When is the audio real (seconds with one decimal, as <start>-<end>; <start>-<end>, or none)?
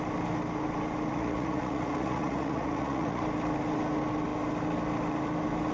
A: 0.0-1.1; 3.2-5.7